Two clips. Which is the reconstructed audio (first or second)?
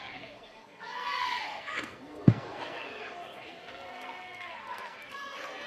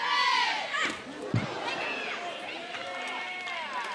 first